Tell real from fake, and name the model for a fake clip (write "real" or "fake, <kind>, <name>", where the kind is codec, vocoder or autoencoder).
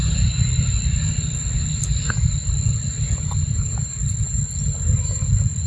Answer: real